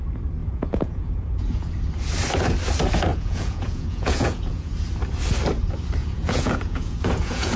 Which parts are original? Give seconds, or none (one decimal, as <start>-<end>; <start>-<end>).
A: 0.0-0.4; 1.7-3.1; 4.7-6.0